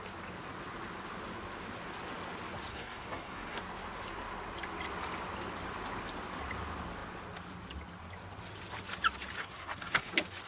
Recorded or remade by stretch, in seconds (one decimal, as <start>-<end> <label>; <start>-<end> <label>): 0.0-2.7 recorded; 2.7-3.6 remade; 3.6-9.4 recorded; 9.4-10.1 remade; 10.1-10.5 recorded